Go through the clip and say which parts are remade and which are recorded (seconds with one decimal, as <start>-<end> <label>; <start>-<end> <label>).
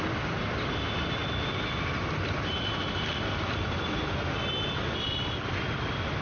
0.0-6.2 recorded